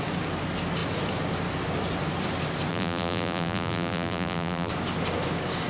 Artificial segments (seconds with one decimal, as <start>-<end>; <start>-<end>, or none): 2.7-4.7